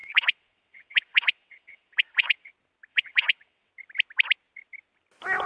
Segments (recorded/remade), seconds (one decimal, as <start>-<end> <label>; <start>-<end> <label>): 0.0-2.5 remade; 2.5-2.9 recorded; 2.9-3.7 remade; 3.7-5.5 recorded